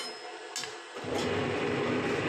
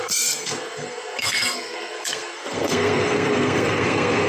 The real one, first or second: first